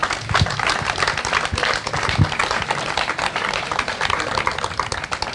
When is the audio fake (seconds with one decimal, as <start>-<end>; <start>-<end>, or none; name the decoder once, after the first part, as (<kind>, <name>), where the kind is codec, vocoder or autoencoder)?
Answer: 2.4-4.6 (vocoder, BigVGAN v2)